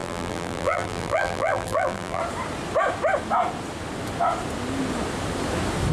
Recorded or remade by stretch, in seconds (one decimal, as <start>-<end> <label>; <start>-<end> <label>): 0.0-2.2 remade; 2.2-5.9 recorded

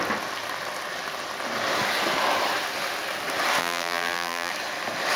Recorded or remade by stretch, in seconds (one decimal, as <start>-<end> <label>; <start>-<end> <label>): 0.0-3.6 recorded; 3.6-4.5 remade; 4.5-5.2 recorded

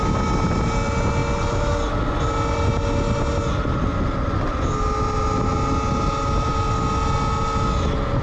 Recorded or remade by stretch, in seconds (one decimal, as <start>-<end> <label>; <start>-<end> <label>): 0.0-8.2 recorded